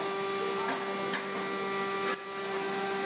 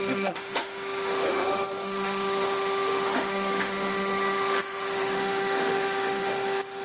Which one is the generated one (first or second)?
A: second